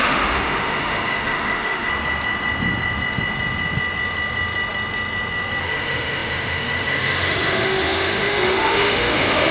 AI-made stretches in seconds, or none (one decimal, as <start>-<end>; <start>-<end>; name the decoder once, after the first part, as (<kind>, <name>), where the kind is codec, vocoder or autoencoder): 0.0-1.9 (autoencoder, DAC-VAE); 5.6-9.5